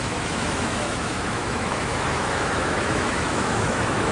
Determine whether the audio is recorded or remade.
remade